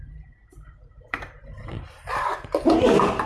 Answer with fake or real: fake